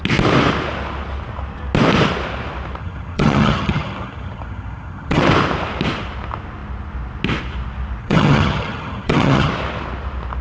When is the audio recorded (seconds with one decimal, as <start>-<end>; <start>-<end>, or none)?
0.0-2.8; 5.2-8.0; 9.5-10.4

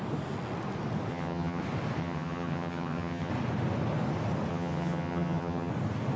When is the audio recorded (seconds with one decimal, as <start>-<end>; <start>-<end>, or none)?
0.0-1.1; 1.6-2.0; 3.3-4.5; 5.7-6.2

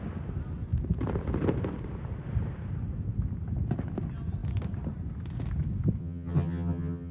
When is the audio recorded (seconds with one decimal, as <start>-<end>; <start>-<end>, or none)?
0.0-6.0

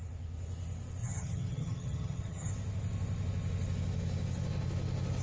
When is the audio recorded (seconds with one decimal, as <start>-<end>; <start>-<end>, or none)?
0.0-1.0; 2.5-5.2

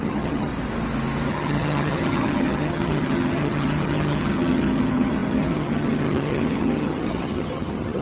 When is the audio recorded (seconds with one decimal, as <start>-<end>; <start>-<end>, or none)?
0.5-1.3

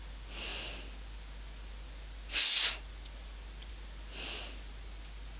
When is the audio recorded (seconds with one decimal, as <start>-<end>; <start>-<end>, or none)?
0.0-5.4

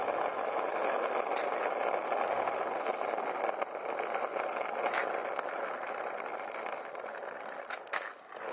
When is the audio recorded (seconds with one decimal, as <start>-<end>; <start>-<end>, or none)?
0.0-8.5

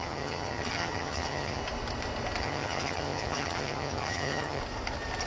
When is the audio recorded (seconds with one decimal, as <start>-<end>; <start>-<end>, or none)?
1.6-2.4; 4.6-5.3